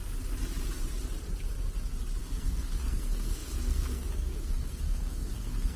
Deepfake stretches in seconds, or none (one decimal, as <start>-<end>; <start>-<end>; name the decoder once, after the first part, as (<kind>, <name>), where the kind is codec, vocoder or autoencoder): 2.2-5.8 (codec, SNAC)